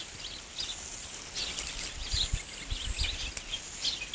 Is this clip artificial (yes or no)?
no